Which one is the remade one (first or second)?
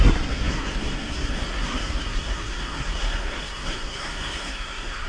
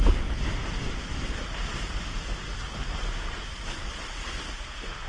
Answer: first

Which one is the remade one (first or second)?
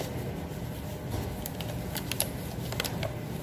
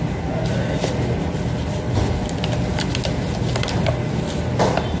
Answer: first